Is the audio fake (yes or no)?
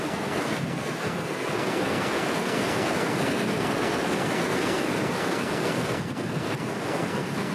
yes